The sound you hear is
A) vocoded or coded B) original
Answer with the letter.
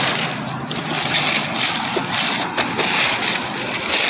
B